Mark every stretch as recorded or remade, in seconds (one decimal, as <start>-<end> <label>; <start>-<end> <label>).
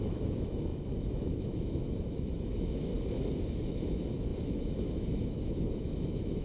0.0-2.9 remade; 2.9-3.7 recorded; 3.7-6.4 remade